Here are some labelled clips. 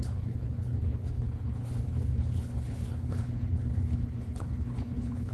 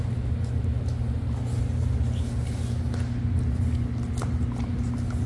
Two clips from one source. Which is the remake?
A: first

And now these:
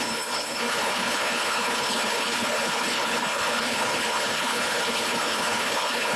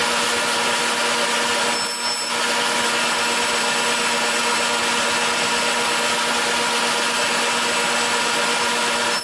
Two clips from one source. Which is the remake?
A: first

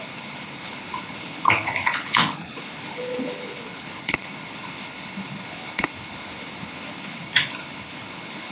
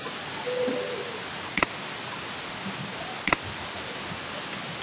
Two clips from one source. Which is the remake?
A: first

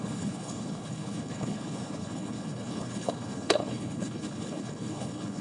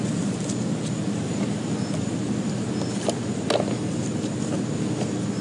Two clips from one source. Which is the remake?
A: first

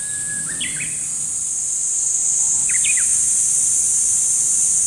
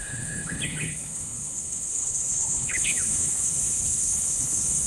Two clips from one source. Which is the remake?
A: second